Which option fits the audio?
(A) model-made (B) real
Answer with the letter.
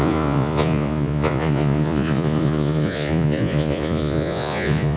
A